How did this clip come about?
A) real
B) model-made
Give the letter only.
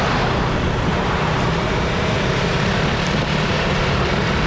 B